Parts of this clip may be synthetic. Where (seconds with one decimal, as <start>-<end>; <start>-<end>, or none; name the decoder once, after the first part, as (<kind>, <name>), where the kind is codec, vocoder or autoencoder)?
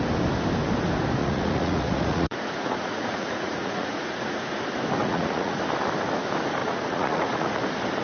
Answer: 1.2-4.6 (vocoder, Vocos); 5.0-5.6; 6.6-7.6